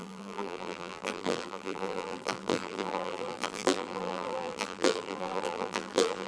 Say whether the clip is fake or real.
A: fake